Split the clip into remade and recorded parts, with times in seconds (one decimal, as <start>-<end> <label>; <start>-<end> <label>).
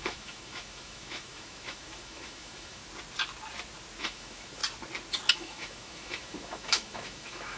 0.0-2.8 remade; 2.8-4.0 recorded; 4.0-4.6 remade; 4.6-5.3 recorded; 5.3-7.6 remade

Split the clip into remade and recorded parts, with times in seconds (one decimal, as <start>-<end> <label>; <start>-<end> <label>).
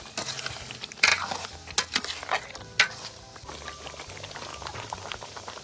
0.0-4.5 recorded; 4.5-5.6 remade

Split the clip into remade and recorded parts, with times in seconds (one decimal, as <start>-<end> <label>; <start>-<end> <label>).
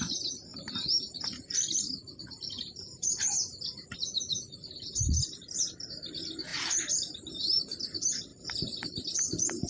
0.0-0.5 recorded; 0.5-3.9 remade; 3.9-6.5 recorded; 6.5-7.6 remade; 7.6-9.7 recorded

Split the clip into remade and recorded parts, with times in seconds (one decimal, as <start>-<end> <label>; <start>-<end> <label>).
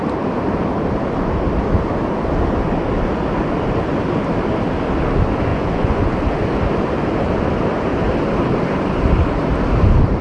0.0-5.5 recorded; 5.5-6.1 remade; 6.1-10.2 recorded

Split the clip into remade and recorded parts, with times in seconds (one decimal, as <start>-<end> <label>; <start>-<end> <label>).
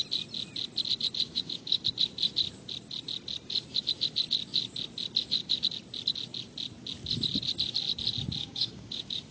0.0-1.3 recorded; 1.3-1.8 remade; 1.8-8.4 recorded; 8.4-9.3 remade